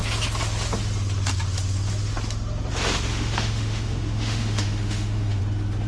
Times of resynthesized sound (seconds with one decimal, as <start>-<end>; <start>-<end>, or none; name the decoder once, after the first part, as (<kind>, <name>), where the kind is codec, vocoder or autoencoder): 3.1-5.4 (autoencoder, DAC-VAE)